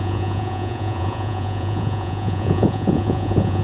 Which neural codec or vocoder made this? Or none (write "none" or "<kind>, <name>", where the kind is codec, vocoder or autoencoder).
vocoder, Vocos